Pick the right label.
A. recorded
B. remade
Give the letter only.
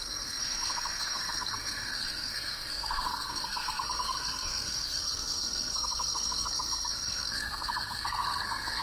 B